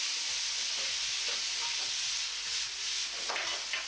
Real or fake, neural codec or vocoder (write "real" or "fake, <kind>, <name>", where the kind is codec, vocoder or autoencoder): real